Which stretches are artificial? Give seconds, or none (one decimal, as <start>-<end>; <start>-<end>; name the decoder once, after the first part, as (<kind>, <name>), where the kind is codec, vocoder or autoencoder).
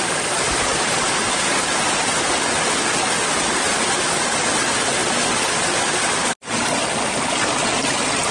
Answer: none